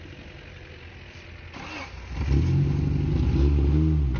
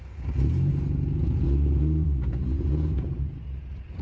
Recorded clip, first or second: first